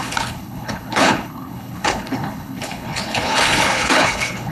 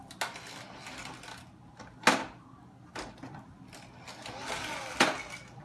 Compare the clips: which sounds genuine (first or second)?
second